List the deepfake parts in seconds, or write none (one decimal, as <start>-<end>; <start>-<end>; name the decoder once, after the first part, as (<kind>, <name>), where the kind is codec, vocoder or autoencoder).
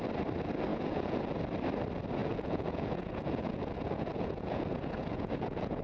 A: 0.7-1.3 (vocoder, Vocos); 2.2-5.8